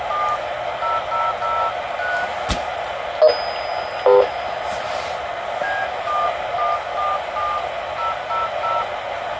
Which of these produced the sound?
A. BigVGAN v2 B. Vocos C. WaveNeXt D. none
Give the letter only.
D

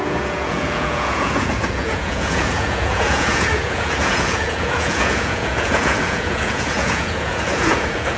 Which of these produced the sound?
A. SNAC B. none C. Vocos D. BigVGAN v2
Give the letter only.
C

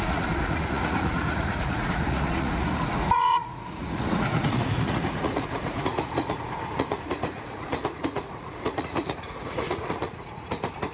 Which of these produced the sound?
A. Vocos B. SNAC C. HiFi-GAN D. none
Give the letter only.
A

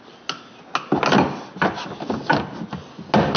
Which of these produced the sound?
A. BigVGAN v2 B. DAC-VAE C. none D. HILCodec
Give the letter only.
C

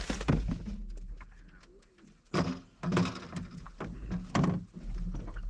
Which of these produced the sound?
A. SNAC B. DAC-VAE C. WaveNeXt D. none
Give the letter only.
D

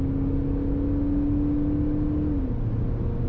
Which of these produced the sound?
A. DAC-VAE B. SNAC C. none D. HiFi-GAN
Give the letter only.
C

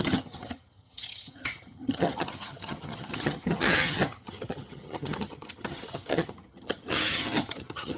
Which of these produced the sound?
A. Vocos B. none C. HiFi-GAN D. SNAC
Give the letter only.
C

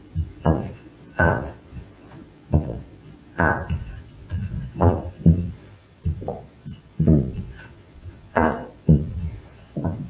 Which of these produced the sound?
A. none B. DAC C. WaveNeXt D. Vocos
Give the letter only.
D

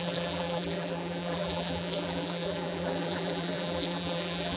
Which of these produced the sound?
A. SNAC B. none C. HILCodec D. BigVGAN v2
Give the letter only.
D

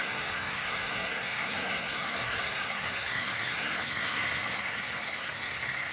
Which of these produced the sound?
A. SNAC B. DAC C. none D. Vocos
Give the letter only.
A